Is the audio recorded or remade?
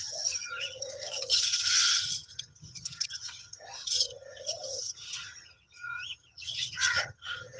remade